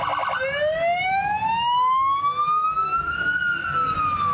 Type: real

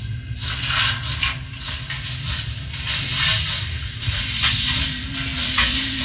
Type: real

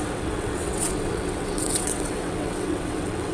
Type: fake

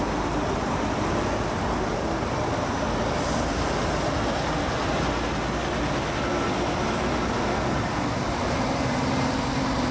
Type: real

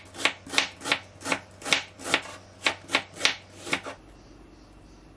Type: real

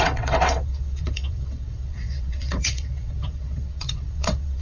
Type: fake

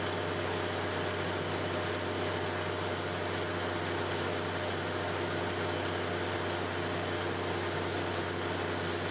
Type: real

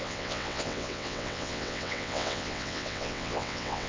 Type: fake